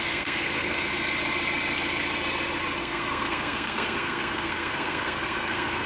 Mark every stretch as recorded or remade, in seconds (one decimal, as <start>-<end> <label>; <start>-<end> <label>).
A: 0.0-0.9 remade; 0.9-2.8 recorded; 2.8-5.9 remade